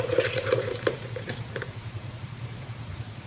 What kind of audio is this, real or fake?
fake